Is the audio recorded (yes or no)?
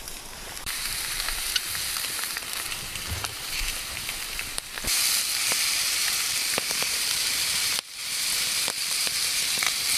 no